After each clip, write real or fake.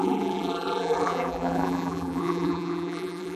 fake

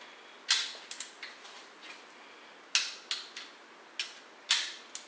real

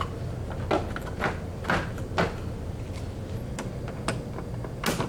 real